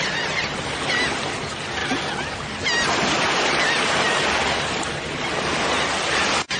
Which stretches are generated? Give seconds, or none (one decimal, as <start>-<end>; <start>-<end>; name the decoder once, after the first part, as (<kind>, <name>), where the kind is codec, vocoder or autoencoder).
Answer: none